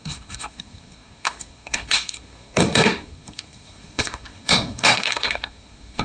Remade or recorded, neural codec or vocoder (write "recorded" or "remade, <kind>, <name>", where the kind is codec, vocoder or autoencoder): remade, codec, SNAC